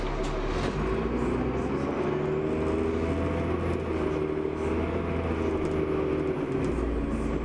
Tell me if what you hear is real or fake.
real